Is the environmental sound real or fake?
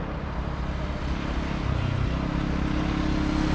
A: real